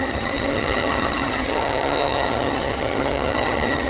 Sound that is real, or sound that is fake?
fake